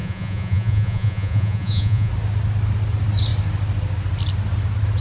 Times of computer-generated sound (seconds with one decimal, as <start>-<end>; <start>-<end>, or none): 0.0-2.1